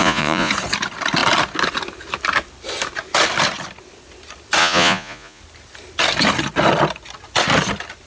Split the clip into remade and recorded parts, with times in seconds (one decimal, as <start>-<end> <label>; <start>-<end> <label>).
0.0-0.5 remade; 0.5-4.6 recorded; 4.6-5.4 remade; 5.4-8.1 recorded